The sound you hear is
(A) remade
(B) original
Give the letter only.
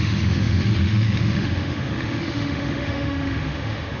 A